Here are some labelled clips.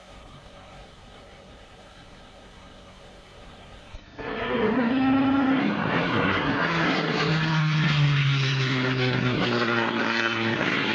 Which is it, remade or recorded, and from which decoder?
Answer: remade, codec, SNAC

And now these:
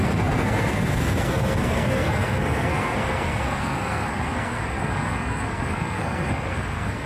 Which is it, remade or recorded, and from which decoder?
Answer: remade, codec, SNAC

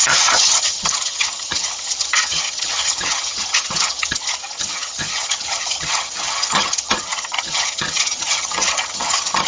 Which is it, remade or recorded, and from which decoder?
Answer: remade, vocoder, HiFi-GAN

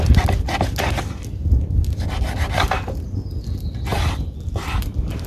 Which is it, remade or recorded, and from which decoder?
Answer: recorded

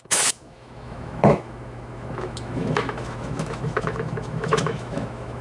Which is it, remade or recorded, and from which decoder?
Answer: remade, autoencoder, DAC-VAE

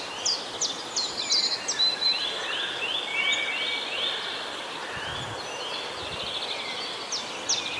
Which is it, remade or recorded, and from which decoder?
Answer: recorded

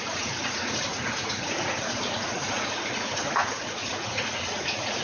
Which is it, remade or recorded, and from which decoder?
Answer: remade, vocoder, Vocos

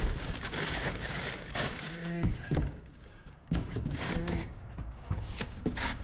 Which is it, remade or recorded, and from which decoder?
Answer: remade, codec, DAC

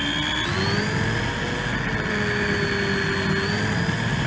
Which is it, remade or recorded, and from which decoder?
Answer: recorded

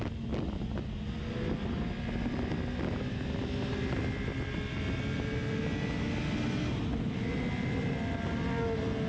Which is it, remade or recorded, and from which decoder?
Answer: recorded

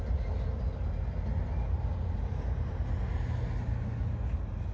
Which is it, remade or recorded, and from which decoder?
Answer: recorded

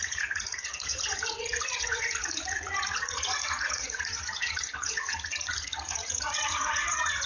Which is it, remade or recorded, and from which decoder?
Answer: remade, vocoder, Vocos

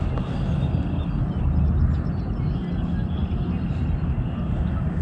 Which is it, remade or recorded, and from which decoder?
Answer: recorded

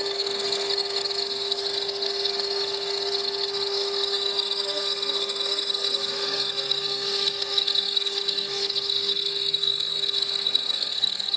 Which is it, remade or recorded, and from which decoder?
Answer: remade, codec, SNAC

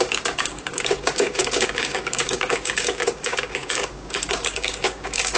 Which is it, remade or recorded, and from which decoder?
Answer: remade, codec, DAC